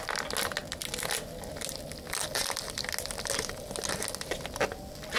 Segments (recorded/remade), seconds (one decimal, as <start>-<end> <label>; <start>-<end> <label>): 0.0-5.2 recorded